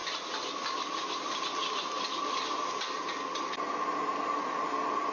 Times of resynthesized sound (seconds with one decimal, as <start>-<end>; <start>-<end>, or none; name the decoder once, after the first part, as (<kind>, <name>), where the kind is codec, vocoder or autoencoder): none